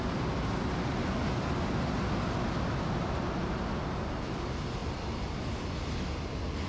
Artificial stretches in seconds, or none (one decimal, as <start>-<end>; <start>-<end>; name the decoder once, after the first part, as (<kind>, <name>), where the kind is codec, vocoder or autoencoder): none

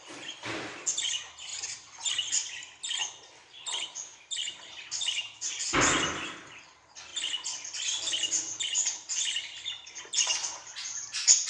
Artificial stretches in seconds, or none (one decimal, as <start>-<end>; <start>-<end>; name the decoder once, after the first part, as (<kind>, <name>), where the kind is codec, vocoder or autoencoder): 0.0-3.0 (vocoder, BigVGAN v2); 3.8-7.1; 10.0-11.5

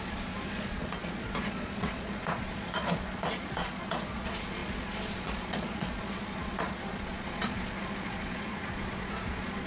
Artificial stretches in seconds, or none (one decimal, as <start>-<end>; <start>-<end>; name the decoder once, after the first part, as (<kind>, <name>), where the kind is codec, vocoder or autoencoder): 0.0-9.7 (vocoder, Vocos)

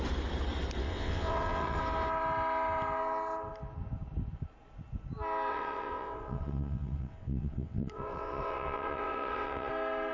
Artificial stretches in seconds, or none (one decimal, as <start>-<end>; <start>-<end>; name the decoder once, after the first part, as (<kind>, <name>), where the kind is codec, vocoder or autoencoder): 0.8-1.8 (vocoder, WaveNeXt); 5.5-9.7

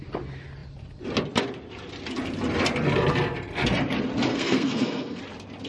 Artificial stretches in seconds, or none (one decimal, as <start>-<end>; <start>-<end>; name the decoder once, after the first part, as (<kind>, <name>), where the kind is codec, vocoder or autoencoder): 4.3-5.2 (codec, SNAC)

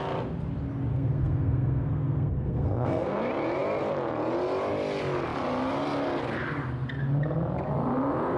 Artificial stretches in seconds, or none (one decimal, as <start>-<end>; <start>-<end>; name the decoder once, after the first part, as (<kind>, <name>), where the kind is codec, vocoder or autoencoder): 0.9-3.2 (codec, SNAC)

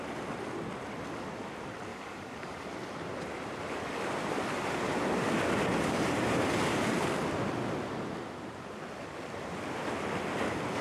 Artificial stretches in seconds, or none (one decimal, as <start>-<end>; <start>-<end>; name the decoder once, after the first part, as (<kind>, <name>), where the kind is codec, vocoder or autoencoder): 1.9-2.7 (codec, DAC)